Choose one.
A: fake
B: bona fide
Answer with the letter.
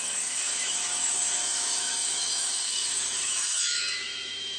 A